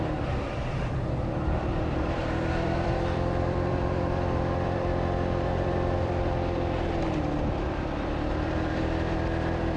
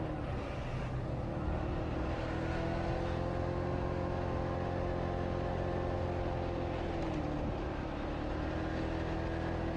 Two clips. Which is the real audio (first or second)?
second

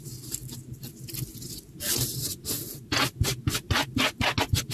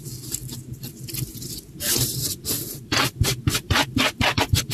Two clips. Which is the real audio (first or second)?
first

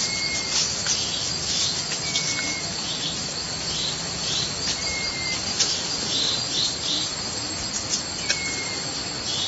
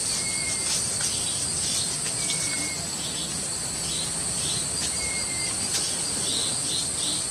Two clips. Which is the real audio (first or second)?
first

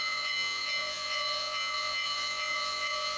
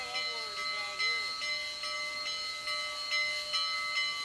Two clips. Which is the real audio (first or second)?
second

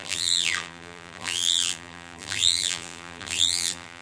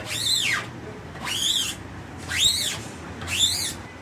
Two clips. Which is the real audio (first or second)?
second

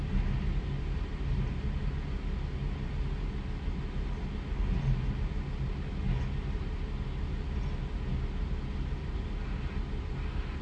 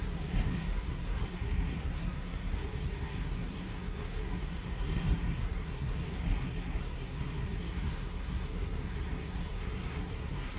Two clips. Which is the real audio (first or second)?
first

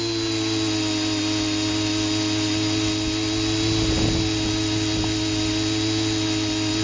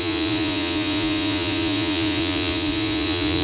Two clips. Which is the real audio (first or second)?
first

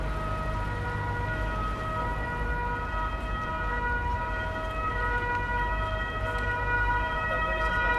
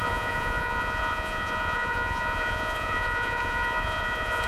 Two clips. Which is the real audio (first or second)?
first